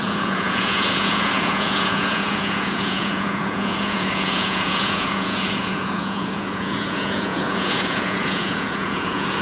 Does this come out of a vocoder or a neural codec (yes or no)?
yes